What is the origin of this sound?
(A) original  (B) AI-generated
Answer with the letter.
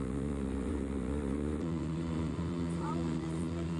B